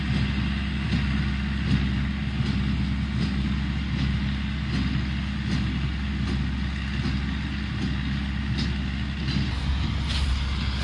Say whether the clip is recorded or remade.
recorded